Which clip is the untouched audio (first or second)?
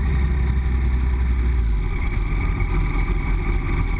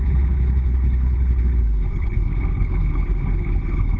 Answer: first